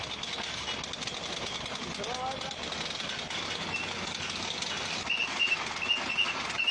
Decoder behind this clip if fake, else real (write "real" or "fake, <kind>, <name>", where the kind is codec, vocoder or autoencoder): real